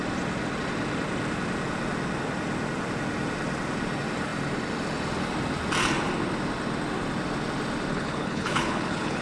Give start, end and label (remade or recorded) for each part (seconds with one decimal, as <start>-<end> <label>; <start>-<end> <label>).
0.0-7.9 recorded; 7.9-9.2 remade